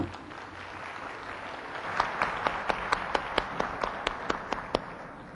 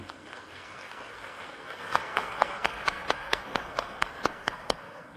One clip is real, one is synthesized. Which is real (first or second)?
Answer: first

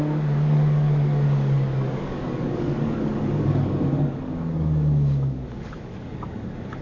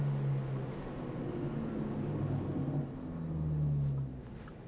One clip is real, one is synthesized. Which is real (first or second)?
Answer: second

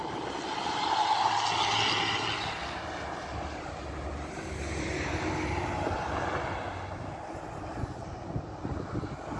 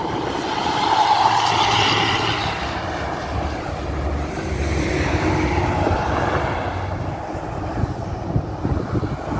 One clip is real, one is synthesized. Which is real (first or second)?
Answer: first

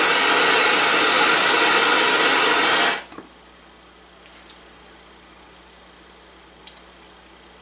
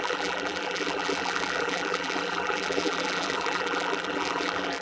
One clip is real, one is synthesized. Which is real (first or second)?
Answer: first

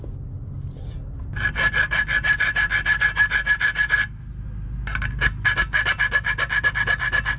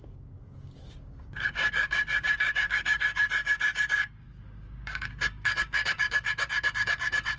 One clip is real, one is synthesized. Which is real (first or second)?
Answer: first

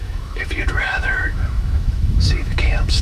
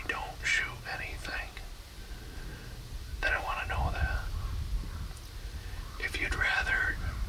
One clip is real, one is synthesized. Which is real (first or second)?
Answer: second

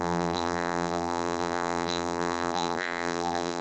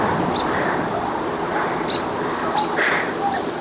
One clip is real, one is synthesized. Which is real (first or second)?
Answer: second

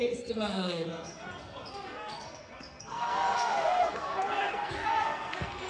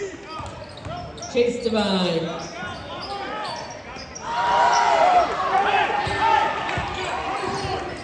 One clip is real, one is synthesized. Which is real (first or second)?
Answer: second